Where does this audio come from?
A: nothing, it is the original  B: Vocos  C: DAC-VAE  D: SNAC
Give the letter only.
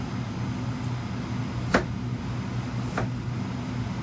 A